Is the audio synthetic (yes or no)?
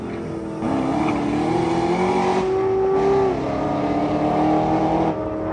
no